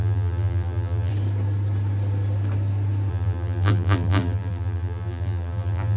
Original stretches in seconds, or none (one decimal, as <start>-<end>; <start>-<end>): 1.1-3.1